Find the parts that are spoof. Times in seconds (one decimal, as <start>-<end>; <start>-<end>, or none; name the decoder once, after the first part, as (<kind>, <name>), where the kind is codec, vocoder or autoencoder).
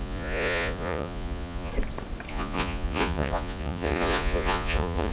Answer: 0.0-1.7 (vocoder, Vocos); 2.3-5.1